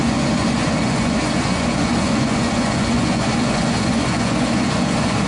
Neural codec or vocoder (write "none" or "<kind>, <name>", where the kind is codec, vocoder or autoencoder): vocoder, Vocos